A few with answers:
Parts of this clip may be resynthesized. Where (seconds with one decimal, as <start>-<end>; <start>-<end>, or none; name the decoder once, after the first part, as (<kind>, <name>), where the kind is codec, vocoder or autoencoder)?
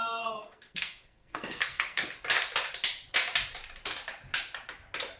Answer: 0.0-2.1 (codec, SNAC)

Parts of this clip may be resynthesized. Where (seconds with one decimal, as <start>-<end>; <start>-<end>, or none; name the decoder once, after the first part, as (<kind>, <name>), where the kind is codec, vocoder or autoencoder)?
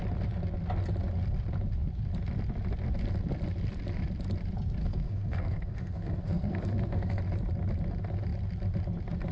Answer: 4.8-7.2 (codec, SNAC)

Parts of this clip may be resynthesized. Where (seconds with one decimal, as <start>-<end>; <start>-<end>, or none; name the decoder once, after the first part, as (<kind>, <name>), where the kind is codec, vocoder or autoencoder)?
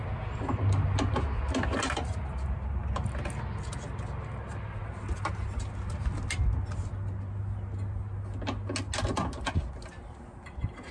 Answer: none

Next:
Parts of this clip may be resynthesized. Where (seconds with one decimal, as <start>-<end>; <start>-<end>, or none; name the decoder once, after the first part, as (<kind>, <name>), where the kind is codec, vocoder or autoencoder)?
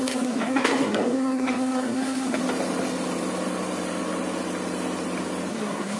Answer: 0.0-2.4 (codec, SNAC); 5.5-6.0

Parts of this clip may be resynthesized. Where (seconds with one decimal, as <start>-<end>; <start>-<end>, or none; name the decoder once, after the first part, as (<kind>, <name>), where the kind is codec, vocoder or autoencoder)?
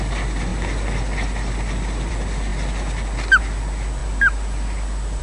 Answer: none